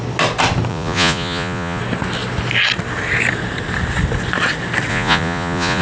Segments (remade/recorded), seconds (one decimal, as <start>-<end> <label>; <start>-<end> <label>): 0.0-0.7 recorded; 0.7-1.8 remade; 1.8-4.9 recorded; 4.9-5.8 remade

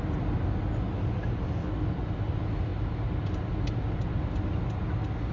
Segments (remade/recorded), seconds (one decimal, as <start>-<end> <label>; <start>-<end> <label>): 0.0-5.3 recorded

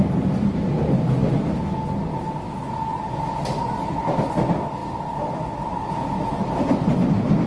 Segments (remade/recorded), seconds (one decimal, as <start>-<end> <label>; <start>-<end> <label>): 0.0-7.5 recorded